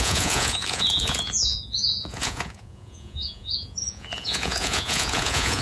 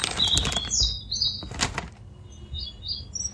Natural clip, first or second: second